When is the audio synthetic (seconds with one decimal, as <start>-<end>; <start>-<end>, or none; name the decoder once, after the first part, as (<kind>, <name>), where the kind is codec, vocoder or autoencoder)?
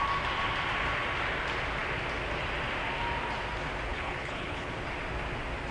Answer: 3.9-4.7 (codec, HILCodec)